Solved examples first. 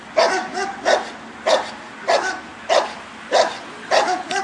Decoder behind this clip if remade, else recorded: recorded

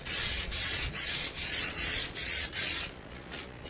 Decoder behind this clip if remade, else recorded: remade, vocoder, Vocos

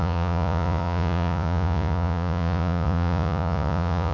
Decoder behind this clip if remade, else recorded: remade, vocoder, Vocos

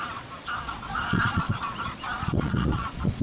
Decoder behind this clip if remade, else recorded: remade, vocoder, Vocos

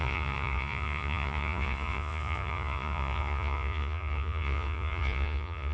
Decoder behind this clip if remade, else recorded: remade, vocoder, Vocos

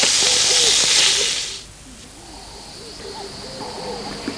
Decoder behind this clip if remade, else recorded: recorded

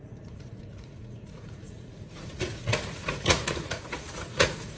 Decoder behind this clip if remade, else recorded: remade, vocoder, Vocos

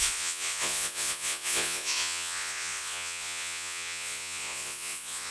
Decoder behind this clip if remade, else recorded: remade, vocoder, Vocos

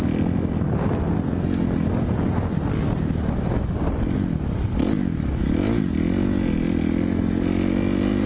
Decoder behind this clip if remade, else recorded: recorded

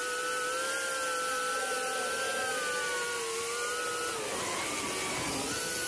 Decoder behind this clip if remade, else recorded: recorded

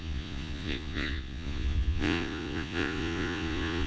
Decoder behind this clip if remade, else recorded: remade, vocoder, Vocos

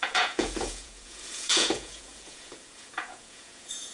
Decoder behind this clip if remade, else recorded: remade, vocoder, Vocos